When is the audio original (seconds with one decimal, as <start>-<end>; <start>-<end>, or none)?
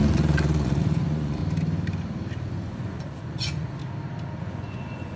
1.4-2.5; 3.8-4.4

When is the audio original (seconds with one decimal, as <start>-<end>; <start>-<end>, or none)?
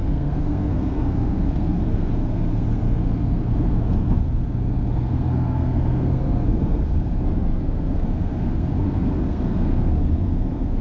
none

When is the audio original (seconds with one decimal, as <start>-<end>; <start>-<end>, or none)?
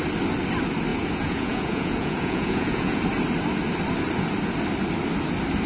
0.0-0.9; 3.0-5.7